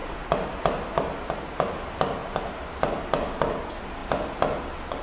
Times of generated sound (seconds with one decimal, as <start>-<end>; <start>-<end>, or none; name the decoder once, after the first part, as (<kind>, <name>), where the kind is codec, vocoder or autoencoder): 0.0-1.4 (vocoder, BigVGAN v2); 2.2-2.8; 4.0-4.6